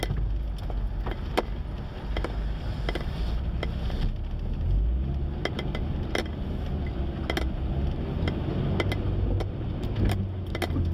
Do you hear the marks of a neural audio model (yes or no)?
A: no